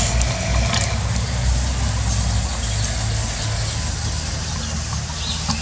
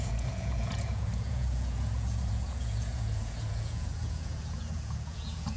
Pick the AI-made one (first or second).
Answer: second